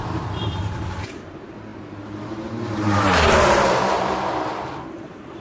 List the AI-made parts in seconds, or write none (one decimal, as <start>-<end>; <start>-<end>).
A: 0.0-5.4